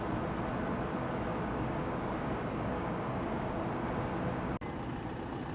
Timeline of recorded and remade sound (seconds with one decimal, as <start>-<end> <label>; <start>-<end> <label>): 0.0-1.3 recorded; 1.3-3.6 remade; 3.6-5.5 recorded